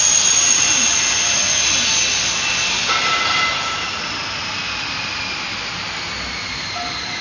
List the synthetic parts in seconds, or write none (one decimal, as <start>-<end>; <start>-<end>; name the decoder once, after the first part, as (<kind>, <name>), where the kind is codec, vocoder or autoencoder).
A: 6.4-7.2 (vocoder, BigVGAN v2)